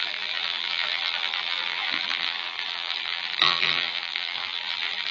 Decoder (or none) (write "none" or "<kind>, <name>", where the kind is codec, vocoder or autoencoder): vocoder, BigVGAN v2